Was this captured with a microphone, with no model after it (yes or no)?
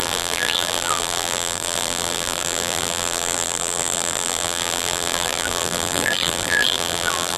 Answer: no